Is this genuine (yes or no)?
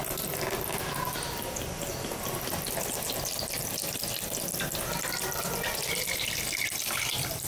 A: yes